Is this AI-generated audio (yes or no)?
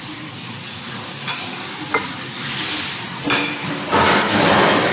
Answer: no